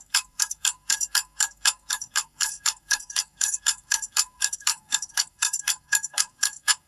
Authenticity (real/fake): fake